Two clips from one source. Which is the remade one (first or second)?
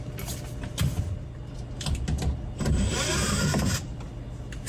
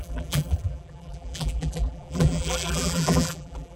second